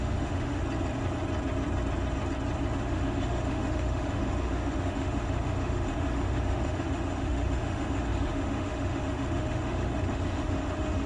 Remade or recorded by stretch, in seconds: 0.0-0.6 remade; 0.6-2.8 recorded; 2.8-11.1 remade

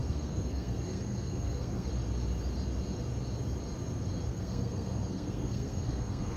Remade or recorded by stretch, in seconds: 0.0-1.9 remade; 1.9-4.3 recorded; 4.3-6.4 remade

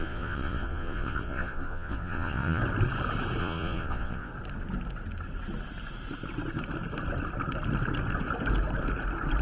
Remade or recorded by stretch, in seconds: 0.0-2.6 remade; 2.6-3.4 recorded; 3.4-4.3 remade; 4.3-9.4 recorded

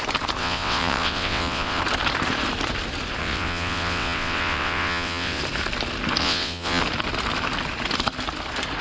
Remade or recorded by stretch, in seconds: 0.0-0.4 recorded; 0.4-1.8 remade; 1.8-3.2 recorded; 3.2-5.4 remade; 5.4-6.2 recorded; 6.2-6.8 remade; 6.8-8.8 recorded

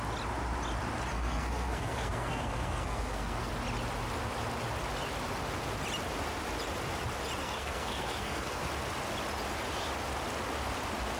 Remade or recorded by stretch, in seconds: 0.0-1.1 recorded; 1.1-3.5 remade; 3.5-7.4 recorded; 7.4-8.6 remade; 8.6-11.2 recorded

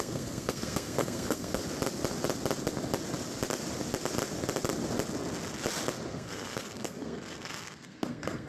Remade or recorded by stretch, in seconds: 0.0-1.6 remade; 1.6-6.1 recorded; 6.1-8.5 remade